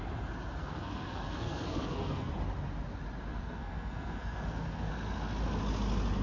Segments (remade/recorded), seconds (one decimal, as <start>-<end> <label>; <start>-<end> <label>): 0.0-0.6 recorded; 0.6-2.3 remade; 2.3-3.3 recorded; 3.3-4.9 remade; 4.9-6.2 recorded